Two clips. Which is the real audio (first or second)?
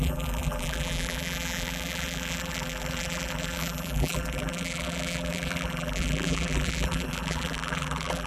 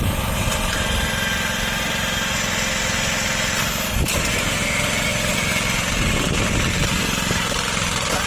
second